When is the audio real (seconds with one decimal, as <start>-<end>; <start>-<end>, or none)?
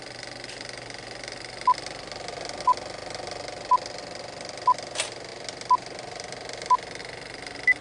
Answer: 0.0-7.8